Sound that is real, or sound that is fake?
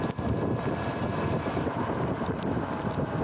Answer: real